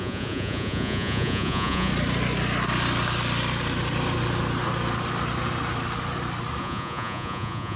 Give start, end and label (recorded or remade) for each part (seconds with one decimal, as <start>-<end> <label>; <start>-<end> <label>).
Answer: 0.0-1.9 remade; 1.9-6.6 recorded; 6.6-7.8 remade